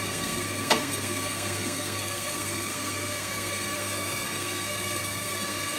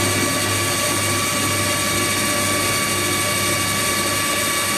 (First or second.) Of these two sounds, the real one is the second